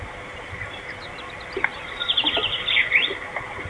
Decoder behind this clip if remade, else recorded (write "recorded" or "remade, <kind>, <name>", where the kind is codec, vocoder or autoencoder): recorded